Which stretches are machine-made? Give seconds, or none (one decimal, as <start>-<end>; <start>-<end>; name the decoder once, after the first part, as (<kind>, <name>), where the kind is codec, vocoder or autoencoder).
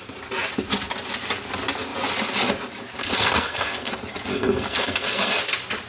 3.0-3.9 (codec, SNAC); 4.3-5.4